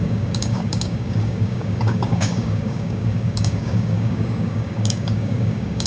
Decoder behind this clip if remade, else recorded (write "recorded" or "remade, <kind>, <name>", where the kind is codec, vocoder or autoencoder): remade, codec, DAC